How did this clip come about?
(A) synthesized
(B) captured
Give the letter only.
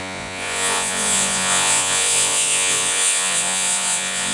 A